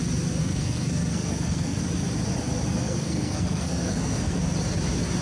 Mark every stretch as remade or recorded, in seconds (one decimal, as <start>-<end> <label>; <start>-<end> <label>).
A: 0.0-0.4 recorded; 0.4-1.8 remade; 1.8-2.7 recorded; 2.7-4.4 remade; 4.4-5.2 recorded